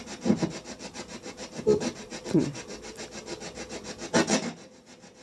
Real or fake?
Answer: fake